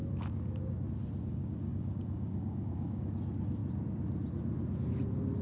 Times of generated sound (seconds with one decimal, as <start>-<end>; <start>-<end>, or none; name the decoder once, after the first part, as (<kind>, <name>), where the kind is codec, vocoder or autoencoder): 1.3-3.1 (codec, DAC)